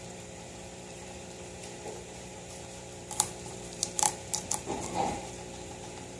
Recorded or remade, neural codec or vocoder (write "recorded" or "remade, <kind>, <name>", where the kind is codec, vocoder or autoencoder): remade, vocoder, BigVGAN v2